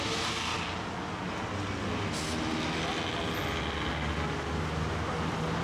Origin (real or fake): real